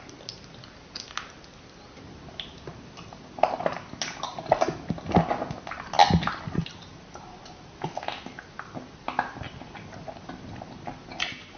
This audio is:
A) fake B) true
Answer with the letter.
B